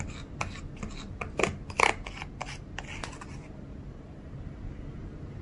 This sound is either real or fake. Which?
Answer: real